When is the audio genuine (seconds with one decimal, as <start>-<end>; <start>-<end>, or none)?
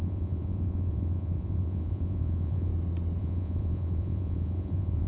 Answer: 2.7-3.2